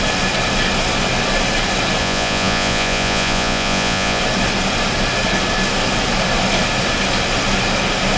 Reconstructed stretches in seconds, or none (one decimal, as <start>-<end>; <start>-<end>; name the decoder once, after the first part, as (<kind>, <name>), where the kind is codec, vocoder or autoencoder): 2.0-4.2 (vocoder, Vocos)